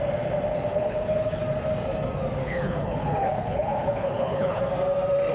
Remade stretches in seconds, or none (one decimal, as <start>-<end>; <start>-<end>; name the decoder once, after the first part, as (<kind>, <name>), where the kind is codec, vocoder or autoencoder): 0.7-1.4 (codec, HILCodec); 2.4-4.6